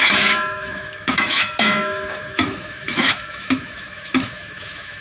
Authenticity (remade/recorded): remade